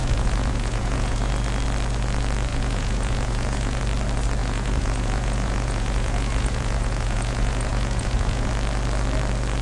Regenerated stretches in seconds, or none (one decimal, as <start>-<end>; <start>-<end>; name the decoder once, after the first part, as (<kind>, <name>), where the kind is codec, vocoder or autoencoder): 0.0-1.3 (vocoder, Vocos); 2.5-3.8; 4.4-8.5